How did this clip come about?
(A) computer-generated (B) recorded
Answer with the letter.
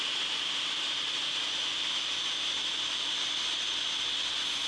B